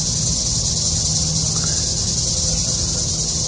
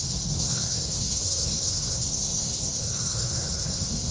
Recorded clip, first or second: first